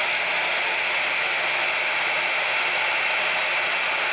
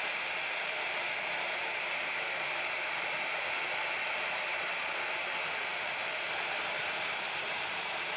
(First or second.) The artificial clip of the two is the second